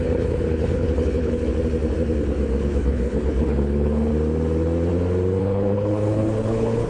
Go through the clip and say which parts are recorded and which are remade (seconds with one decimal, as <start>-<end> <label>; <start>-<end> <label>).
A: 0.0-1.5 remade; 1.5-2.6 recorded; 2.6-4.1 remade; 4.1-5.4 recorded; 5.4-6.9 remade